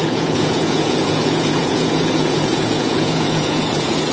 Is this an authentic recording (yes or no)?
no